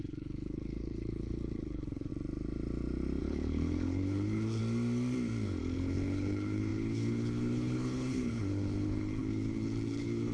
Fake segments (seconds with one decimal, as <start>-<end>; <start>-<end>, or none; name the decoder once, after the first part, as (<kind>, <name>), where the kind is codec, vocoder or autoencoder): 0.0-2.1 (codec, HILCodec); 3.2-4.6; 5.6-10.3